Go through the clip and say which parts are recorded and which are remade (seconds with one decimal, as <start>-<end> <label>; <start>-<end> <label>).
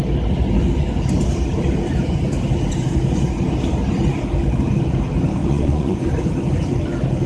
0.0-5.4 recorded; 5.4-6.0 remade; 6.0-7.3 recorded